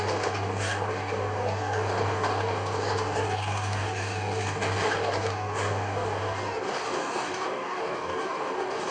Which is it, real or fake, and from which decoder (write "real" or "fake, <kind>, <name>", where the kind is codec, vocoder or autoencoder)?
fake, codec, DAC